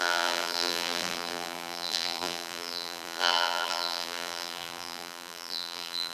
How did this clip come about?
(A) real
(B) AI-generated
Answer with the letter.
B